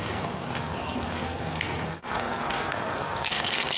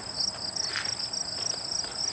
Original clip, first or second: second